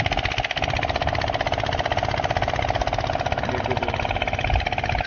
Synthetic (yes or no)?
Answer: no